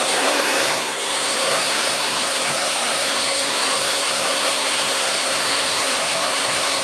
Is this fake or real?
fake